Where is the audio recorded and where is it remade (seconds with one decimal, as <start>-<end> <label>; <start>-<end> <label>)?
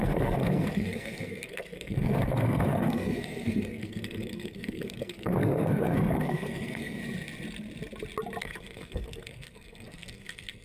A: 0.0-7.0 remade; 7.0-8.4 recorded; 8.4-10.6 remade